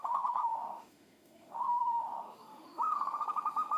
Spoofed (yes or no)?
yes